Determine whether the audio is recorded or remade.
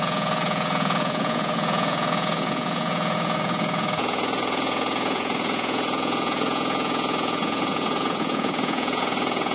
remade